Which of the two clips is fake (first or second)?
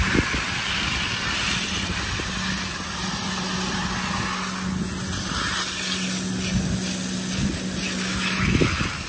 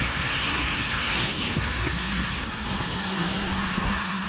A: second